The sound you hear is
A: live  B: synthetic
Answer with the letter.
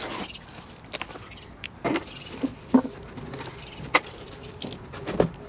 B